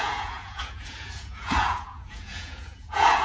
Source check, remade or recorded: remade